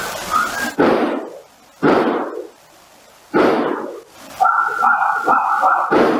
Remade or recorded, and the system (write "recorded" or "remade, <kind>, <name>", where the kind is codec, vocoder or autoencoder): recorded